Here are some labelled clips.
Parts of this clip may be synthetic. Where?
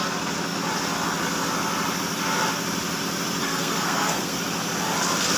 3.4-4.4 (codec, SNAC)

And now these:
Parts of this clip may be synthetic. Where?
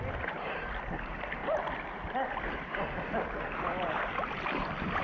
none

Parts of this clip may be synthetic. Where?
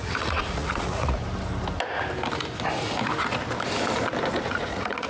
0.0-1.2 (vocoder, Vocos); 4.3-5.1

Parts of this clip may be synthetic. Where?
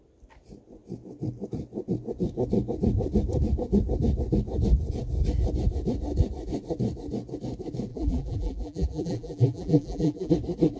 7.9-10.3 (vocoder, BigVGAN v2)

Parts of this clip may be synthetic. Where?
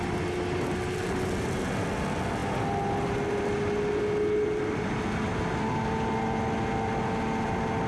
none